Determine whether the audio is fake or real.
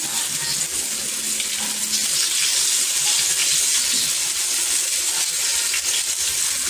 real